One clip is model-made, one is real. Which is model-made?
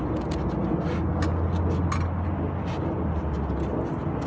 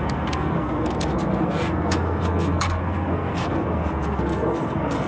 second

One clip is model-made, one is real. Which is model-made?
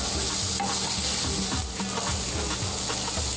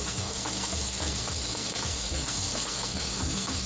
second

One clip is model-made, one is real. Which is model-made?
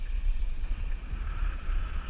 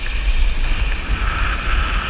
first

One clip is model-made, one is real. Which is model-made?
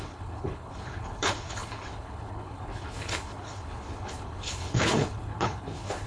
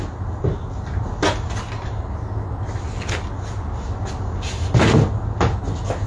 first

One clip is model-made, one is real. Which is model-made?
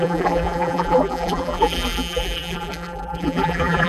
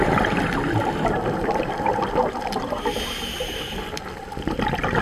first